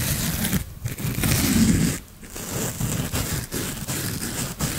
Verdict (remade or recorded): recorded